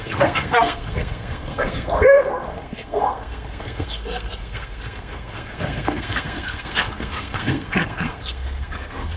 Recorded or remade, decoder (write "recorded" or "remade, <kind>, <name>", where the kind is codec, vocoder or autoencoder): remade, codec, SNAC